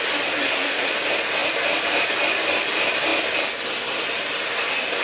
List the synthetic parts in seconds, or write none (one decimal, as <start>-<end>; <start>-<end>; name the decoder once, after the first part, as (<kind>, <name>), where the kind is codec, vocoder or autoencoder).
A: 0.4-0.9 (codec, SNAC)